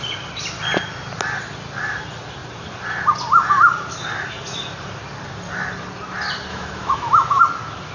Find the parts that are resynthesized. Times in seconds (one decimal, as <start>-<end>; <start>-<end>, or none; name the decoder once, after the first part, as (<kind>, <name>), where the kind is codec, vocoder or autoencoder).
6.5-7.4 (autoencoder, DAC-VAE)